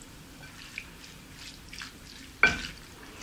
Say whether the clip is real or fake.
real